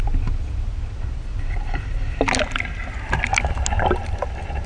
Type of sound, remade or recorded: recorded